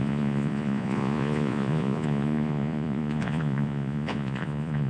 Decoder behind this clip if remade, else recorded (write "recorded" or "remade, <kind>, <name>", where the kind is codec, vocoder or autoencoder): remade, vocoder, Vocos